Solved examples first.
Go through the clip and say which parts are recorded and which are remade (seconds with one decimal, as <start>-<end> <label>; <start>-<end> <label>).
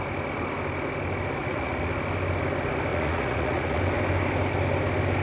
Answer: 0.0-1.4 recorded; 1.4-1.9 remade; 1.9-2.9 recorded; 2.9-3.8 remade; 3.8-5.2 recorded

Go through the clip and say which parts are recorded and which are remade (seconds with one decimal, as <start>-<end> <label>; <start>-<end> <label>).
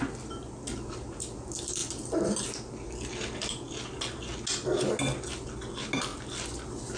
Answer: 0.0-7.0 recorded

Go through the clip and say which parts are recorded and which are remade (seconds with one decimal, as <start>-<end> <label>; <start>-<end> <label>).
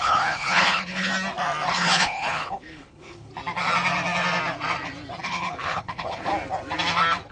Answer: 0.0-1.1 remade; 1.1-1.7 recorded; 1.7-3.3 remade; 3.3-5.2 recorded; 5.2-6.3 remade; 6.3-7.3 recorded